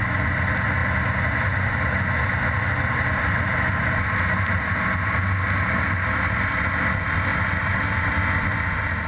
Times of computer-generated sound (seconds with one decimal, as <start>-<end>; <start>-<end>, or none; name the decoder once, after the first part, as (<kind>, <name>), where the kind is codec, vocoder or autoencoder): none